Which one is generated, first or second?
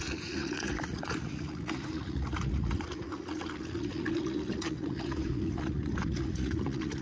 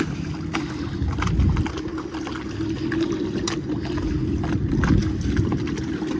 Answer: first